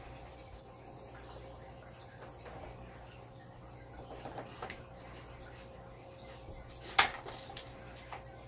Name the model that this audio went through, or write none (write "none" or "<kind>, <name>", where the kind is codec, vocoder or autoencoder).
none